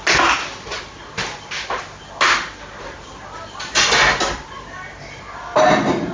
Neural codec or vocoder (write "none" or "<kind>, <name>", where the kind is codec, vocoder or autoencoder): none